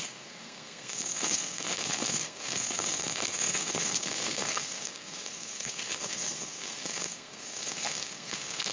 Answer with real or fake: fake